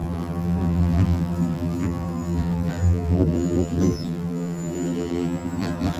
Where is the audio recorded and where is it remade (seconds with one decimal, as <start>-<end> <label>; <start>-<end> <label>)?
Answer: 0.0-6.0 remade